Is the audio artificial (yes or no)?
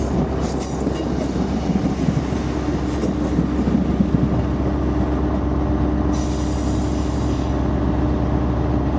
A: no